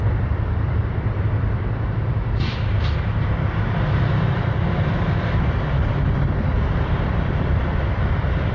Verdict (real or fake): fake